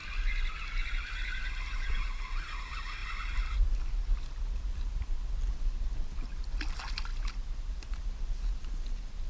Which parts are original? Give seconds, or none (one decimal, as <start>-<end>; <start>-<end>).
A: 0.0-9.3